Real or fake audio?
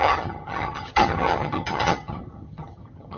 fake